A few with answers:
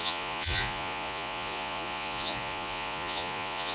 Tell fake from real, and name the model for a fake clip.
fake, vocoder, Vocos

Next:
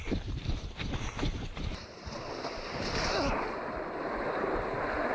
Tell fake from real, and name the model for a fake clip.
fake, vocoder, BigVGAN v2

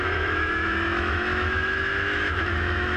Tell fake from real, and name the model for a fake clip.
fake, autoencoder, DAC-VAE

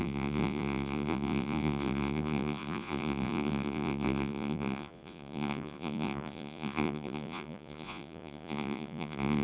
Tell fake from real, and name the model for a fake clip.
fake, vocoder, Vocos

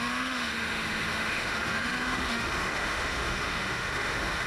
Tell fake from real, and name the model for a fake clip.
fake, autoencoder, DAC-VAE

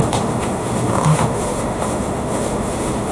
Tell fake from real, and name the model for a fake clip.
fake, autoencoder, DAC-VAE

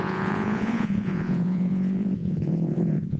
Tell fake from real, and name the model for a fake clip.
fake, vocoder, Vocos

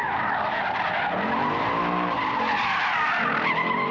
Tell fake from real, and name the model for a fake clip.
real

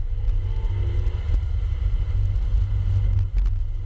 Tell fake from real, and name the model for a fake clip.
real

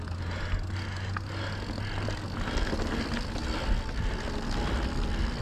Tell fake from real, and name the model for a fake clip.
real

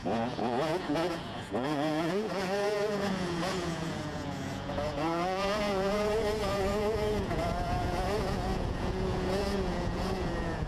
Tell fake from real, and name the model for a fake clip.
fake, vocoder, Vocos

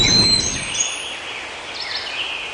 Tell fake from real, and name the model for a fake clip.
real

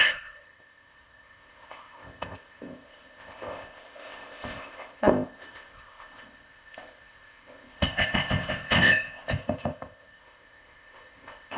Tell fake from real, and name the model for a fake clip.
fake, codec, ZipCodec